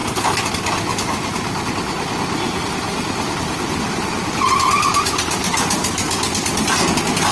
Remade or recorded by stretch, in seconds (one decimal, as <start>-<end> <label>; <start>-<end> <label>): 0.0-0.9 recorded; 0.9-1.7 remade; 1.7-7.3 recorded

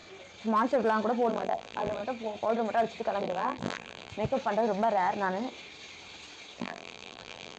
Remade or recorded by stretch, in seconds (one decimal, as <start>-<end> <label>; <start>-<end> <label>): 0.0-1.3 recorded; 1.3-2.0 remade; 2.0-3.2 recorded; 3.2-4.1 remade; 4.1-6.6 recorded; 6.6-7.6 remade

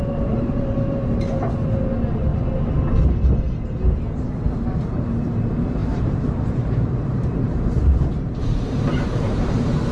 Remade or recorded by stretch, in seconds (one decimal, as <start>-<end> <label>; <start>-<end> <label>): 0.0-2.3 remade; 2.3-4.5 recorded; 4.5-9.9 remade

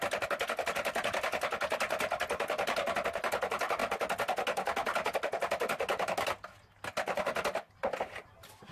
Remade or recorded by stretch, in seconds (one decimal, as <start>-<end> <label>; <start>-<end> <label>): 0.0-8.7 recorded

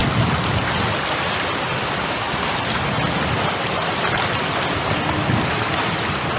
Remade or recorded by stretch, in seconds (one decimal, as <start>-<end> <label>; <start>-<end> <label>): 0.0-6.4 recorded

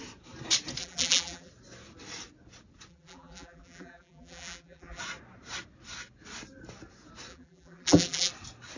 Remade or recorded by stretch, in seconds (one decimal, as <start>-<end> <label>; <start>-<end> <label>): 0.0-0.8 recorded; 0.8-1.5 remade; 1.5-2.9 recorded; 2.9-5.0 remade; 5.0-7.3 recorded; 7.3-8.3 remade; 8.3-8.8 recorded

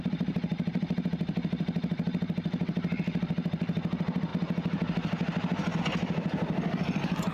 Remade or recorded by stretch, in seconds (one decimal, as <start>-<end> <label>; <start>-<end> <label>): 0.0-7.3 recorded

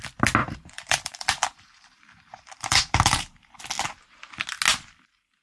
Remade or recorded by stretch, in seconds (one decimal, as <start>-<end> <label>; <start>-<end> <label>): 0.0-0.4 recorded; 0.4-3.6 remade; 3.6-5.4 recorded